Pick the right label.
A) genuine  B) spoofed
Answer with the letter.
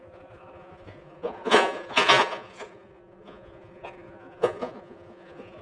B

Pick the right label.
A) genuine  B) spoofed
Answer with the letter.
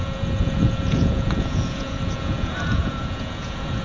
B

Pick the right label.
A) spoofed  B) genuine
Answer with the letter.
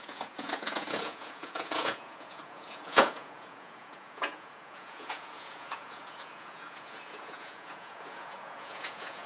A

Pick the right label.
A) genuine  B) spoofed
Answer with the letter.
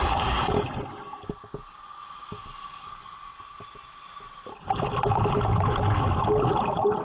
A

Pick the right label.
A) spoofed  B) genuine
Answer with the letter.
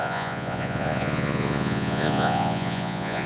A